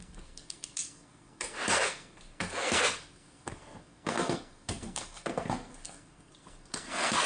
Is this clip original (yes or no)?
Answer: no